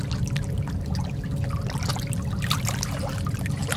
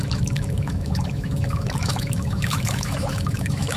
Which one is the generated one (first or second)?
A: second